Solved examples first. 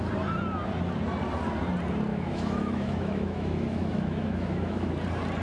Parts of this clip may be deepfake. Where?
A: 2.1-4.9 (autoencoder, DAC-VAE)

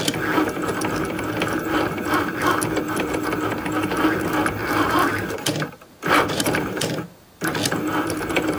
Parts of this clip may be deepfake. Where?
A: 4.6-7.3 (vocoder, BigVGAN v2)

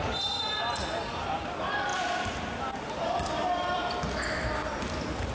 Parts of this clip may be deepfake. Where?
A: 1.9-3.8 (vocoder, BigVGAN v2)

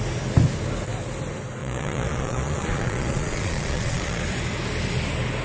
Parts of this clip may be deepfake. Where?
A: 1.6-4.2 (vocoder, Vocos)

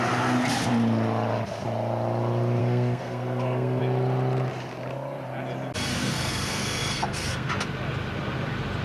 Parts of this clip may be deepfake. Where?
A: 2.6-3.8 (codec, SNAC); 5.9-7.5

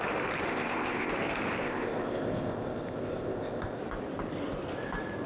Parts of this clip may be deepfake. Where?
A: 0.5-1.1 (codec, ZipCodec); 1.6-3.8

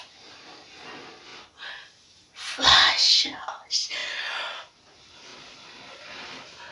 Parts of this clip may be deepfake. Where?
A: none

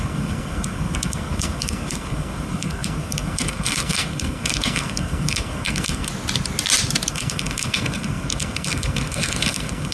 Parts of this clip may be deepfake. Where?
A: 0.0-6.1 (codec, SNAC); 7.1-9.9